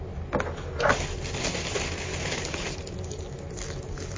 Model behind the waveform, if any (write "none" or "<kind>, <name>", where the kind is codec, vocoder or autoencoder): none